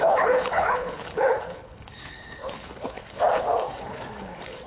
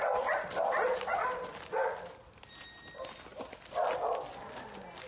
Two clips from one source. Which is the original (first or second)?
second